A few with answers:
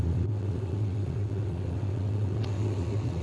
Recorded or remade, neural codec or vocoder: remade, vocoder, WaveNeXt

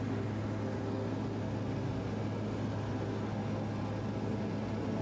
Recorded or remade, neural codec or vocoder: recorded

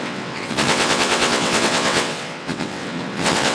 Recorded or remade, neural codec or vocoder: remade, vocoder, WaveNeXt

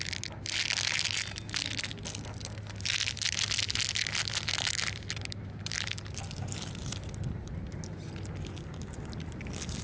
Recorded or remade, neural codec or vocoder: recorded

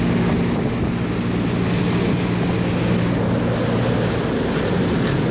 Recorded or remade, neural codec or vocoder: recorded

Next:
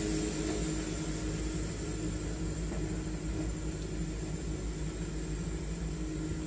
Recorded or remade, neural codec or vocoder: recorded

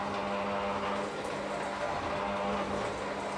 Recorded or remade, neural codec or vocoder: recorded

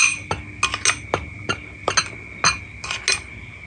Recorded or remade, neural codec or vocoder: recorded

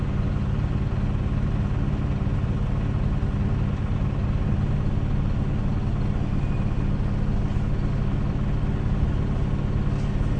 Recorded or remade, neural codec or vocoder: recorded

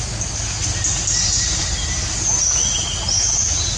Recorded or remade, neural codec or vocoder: recorded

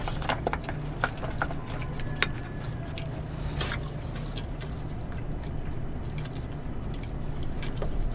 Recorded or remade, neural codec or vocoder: recorded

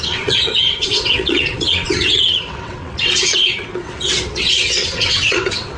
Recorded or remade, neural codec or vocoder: remade, vocoder, WaveNeXt